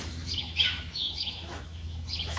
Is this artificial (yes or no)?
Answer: yes